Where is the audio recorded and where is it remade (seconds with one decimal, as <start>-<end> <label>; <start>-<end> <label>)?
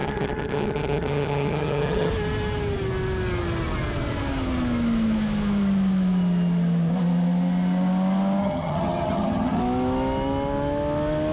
0.0-2.1 remade; 2.1-8.4 recorded; 8.4-9.6 remade; 9.6-11.3 recorded